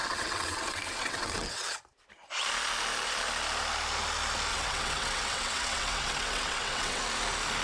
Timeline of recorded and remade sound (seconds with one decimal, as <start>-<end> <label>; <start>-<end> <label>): 0.0-1.8 remade; 1.8-4.5 recorded; 4.5-7.0 remade; 7.0-7.6 recorded